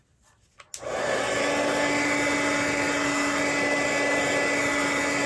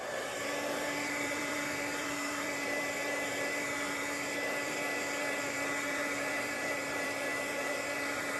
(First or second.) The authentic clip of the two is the first